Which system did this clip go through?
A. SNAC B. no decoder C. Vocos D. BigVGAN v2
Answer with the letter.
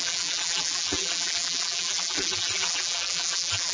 D